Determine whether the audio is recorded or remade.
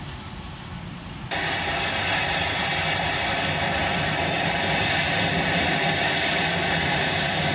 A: recorded